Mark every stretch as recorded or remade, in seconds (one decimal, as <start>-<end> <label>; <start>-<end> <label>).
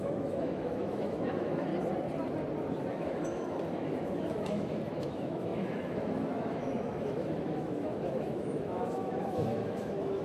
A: 0.0-1.7 remade; 1.7-2.9 recorded; 2.9-10.2 remade